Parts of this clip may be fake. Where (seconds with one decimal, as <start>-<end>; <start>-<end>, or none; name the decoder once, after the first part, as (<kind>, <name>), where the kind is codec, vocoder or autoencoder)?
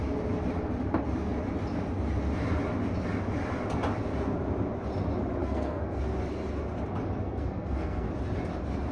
5.4-6.0 (codec, SNAC); 7.2-8.1